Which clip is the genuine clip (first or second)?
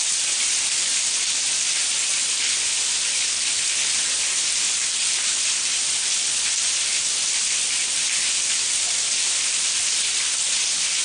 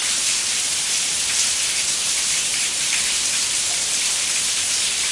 first